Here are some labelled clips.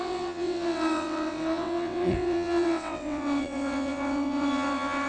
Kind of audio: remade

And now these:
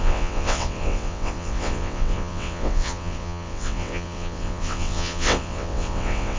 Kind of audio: remade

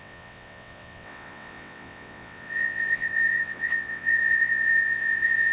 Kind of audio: remade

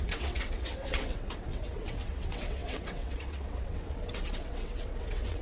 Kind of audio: remade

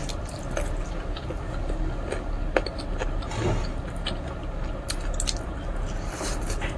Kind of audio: recorded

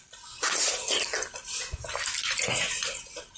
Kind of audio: recorded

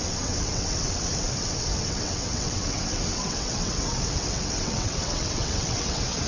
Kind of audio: remade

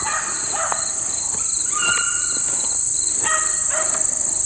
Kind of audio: recorded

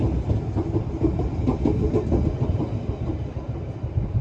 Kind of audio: recorded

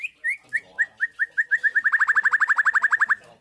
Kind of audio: recorded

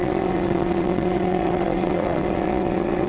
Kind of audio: remade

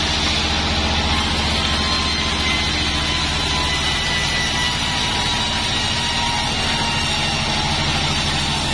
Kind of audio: recorded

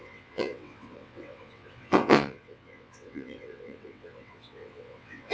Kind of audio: remade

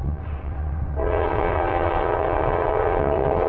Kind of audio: remade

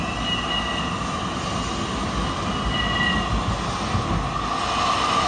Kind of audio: recorded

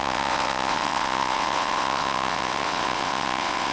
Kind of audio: remade